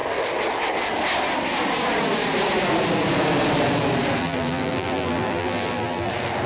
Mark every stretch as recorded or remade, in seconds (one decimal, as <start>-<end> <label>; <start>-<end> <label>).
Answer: 0.0-4.2 recorded; 4.2-6.1 remade; 6.1-6.5 recorded